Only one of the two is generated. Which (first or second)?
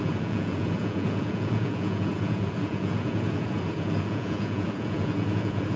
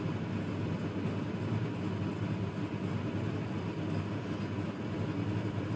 first